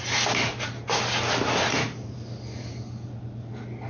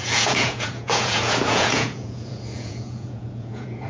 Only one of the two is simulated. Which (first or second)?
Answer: second